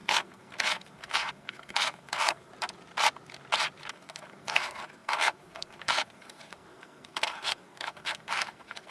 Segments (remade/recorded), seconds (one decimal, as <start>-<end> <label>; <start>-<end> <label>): 0.0-2.5 remade; 2.5-3.9 recorded; 3.9-8.9 remade